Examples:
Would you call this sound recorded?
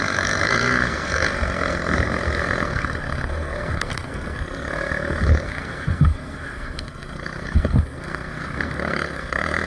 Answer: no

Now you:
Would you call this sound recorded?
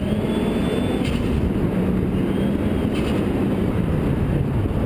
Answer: yes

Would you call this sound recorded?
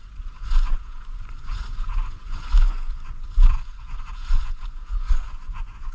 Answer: no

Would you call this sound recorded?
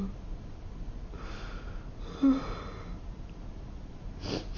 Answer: yes